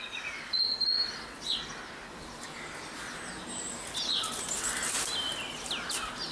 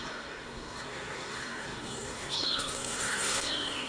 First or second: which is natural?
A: first